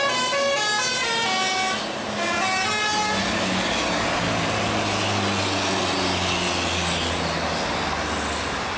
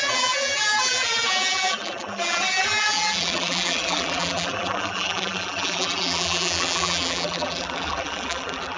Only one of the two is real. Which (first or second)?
first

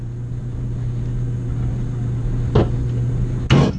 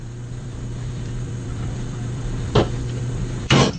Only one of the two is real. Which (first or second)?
first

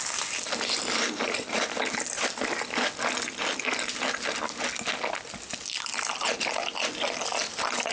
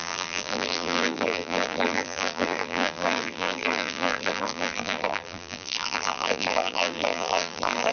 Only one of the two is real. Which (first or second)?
first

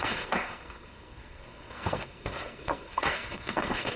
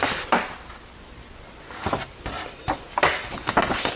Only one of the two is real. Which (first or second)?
second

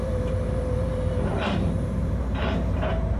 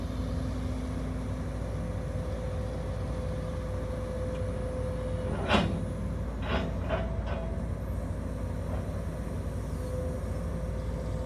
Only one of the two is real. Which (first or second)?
second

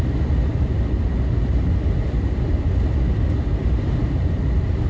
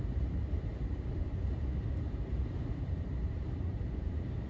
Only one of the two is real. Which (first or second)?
first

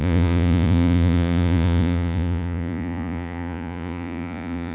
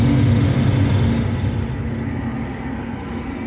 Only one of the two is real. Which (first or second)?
second